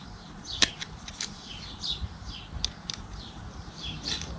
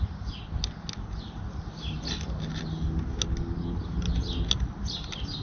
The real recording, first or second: second